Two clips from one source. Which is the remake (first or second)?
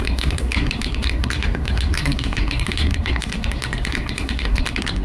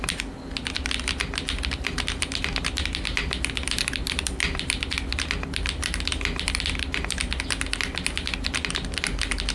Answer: first